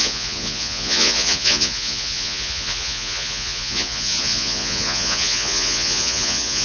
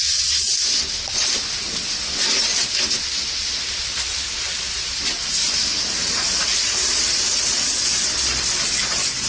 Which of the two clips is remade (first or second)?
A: first